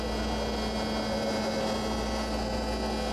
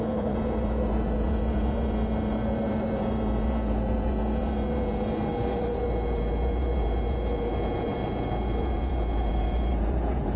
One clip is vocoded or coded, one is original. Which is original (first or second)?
first